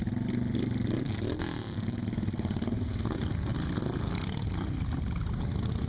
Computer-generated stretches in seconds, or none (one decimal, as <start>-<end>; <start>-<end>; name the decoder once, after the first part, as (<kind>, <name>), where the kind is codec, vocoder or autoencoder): none